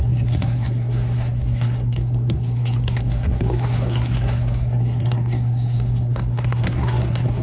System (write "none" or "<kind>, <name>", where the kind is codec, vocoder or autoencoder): codec, SNAC